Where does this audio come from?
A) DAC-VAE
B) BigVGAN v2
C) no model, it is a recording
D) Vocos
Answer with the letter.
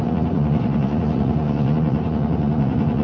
D